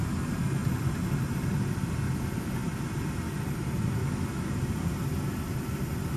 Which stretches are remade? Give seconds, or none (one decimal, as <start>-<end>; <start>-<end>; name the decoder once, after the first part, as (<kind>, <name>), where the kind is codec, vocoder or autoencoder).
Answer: 4.0-4.5 (autoencoder, DAC-VAE)